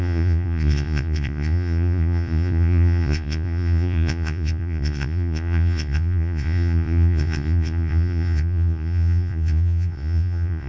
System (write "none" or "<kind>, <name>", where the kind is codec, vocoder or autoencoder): vocoder, Vocos